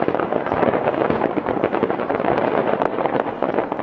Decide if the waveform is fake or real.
fake